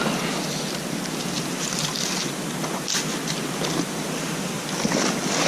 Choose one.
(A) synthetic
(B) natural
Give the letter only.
B